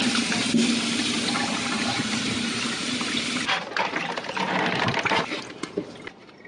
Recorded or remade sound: remade